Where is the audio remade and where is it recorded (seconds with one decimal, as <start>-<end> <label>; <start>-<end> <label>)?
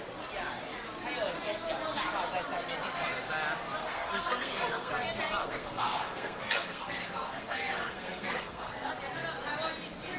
0.0-3.8 recorded; 3.8-4.9 remade; 4.9-5.4 recorded; 5.4-8.9 remade; 8.9-10.2 recorded